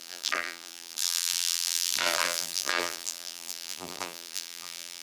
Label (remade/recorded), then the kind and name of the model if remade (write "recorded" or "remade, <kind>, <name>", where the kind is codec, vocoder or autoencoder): remade, vocoder, BigVGAN v2